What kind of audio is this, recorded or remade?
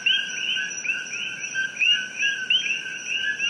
recorded